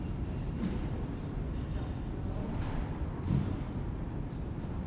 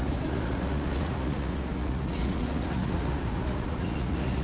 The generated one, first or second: second